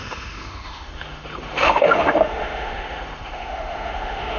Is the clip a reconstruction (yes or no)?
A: yes